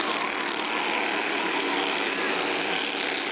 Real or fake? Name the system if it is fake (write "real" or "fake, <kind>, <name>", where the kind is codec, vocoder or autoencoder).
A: real